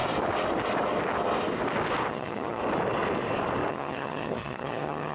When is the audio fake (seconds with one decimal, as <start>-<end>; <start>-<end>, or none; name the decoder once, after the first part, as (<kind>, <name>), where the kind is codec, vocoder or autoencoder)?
2.1-2.6 (vocoder, HiFi-GAN); 3.7-5.1